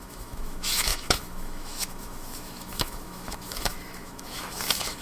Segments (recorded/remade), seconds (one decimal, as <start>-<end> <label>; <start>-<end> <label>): 0.0-5.0 remade